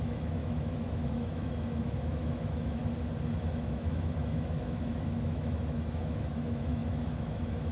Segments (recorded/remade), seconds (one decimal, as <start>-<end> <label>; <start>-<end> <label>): 0.0-2.8 remade; 2.8-3.4 recorded; 3.4-7.7 remade